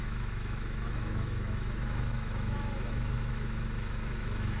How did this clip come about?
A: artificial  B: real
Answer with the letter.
A